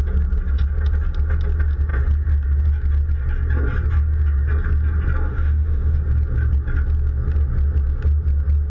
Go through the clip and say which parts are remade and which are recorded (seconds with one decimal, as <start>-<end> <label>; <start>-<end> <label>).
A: 0.0-5.3 recorded; 5.3-6.0 remade; 6.0-8.7 recorded